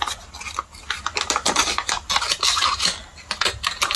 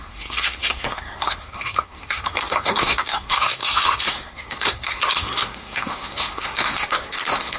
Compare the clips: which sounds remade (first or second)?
second